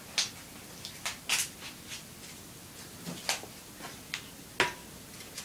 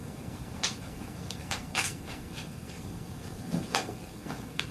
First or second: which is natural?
first